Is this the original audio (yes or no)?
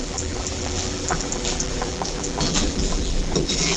no